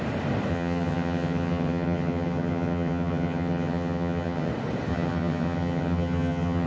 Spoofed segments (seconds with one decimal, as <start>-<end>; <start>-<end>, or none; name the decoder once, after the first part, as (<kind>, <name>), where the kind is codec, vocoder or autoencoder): 0.5-4.5 (vocoder, HiFi-GAN); 4.9-6.7